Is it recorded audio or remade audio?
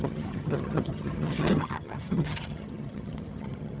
remade